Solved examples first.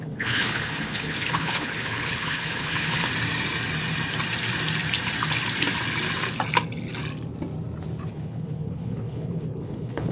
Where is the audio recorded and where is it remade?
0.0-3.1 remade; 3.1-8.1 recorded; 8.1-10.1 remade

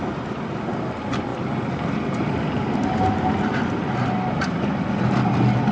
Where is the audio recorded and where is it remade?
0.0-5.7 recorded